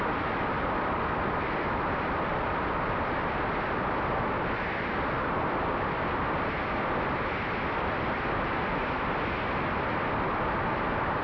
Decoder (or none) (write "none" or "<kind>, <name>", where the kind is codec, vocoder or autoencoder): vocoder, BigVGAN v2